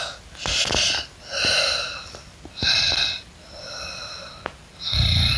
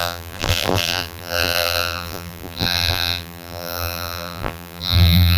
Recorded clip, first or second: first